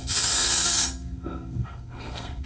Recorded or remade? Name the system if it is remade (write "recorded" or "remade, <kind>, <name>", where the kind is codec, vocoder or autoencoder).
remade, codec, SNAC